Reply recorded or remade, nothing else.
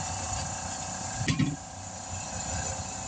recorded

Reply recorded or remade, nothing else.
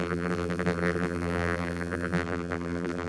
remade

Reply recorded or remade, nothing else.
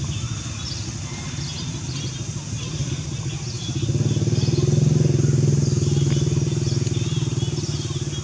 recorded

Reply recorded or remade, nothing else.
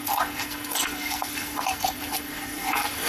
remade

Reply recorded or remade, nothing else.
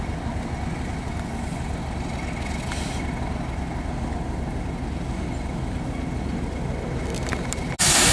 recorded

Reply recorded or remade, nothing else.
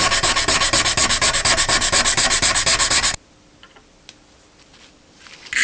recorded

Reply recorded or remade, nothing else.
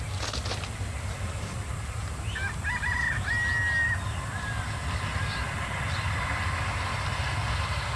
recorded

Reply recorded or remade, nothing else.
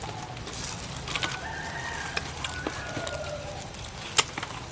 recorded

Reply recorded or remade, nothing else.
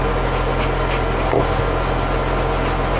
recorded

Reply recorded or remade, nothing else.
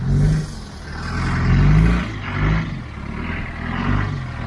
recorded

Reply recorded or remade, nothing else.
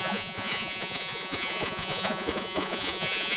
remade